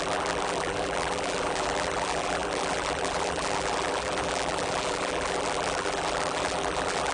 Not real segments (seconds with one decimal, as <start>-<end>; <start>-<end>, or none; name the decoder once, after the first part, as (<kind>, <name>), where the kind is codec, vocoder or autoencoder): 0.0-7.1 (vocoder, BigVGAN v2)